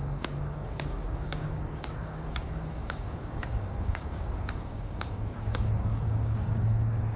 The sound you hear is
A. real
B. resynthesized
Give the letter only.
B